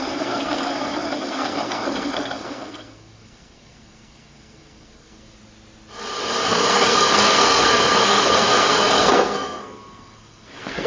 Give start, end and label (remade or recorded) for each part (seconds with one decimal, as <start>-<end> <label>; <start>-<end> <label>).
0.0-5.4 remade; 5.4-6.5 recorded; 6.5-10.9 remade